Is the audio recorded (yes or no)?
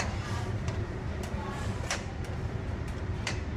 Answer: no